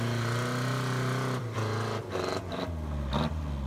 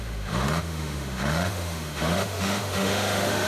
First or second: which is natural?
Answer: first